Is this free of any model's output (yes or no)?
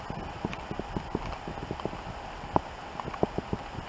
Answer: yes